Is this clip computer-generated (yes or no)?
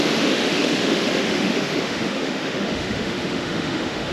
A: yes